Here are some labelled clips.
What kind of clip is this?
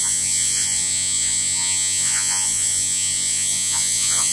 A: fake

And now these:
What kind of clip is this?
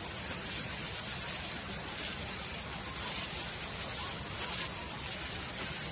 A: real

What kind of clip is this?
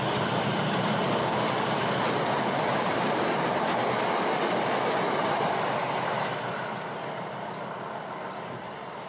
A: real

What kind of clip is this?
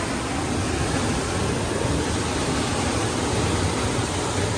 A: real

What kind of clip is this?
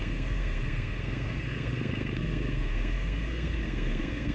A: fake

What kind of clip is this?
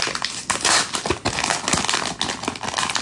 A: real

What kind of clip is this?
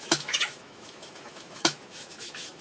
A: fake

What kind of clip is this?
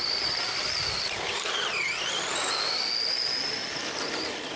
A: real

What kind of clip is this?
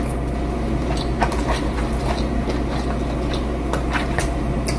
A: real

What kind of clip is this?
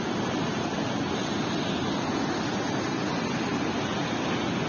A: real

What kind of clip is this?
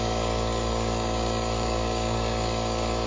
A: fake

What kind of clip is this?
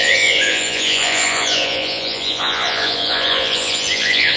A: fake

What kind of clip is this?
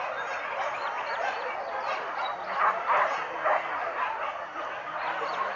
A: real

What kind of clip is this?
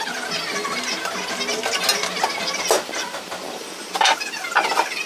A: real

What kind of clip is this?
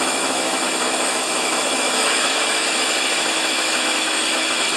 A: fake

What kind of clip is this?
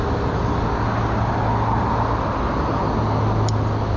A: real